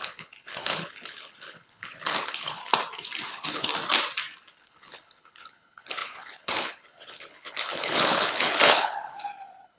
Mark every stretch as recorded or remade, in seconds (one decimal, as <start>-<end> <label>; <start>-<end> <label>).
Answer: 0.0-2.6 remade; 2.6-3.3 recorded; 3.3-3.7 remade; 3.7-4.5 recorded; 4.5-9.8 remade